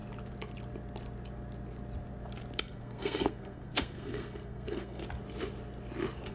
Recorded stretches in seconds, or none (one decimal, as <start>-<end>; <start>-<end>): 0.0-2.6; 5.0-6.3